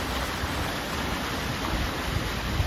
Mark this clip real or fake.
real